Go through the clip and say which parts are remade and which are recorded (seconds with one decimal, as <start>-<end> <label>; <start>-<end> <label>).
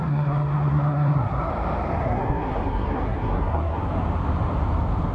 0.0-1.5 remade; 1.5-2.0 recorded; 2.0-3.8 remade; 3.8-5.1 recorded